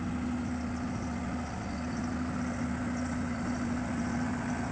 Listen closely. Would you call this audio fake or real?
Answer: real